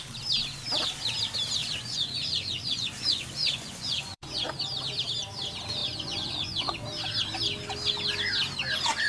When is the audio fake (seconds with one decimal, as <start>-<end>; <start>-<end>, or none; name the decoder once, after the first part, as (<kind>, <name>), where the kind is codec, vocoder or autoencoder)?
1.6-4.5 (vocoder, Vocos); 5.8-6.7